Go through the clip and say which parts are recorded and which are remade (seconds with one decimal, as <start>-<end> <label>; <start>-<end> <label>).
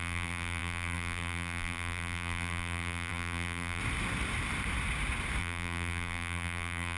0.0-3.8 remade; 3.8-5.4 recorded; 5.4-7.0 remade